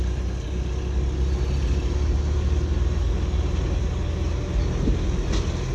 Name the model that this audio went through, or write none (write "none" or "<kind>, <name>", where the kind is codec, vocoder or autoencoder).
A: none